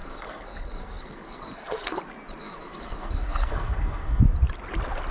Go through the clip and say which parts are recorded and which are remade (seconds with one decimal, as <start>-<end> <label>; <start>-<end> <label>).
0.0-2.0 remade; 2.0-2.4 recorded; 2.4-4.2 remade; 4.2-5.1 recorded